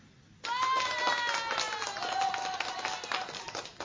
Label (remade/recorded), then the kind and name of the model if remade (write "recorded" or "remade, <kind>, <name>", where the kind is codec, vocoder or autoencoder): recorded